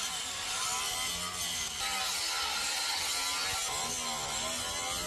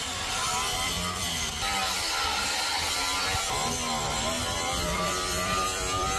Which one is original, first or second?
first